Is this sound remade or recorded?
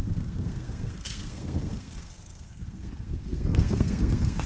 remade